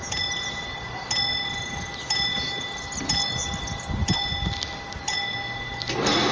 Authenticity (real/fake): real